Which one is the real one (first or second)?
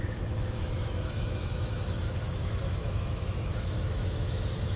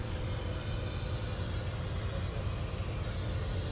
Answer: second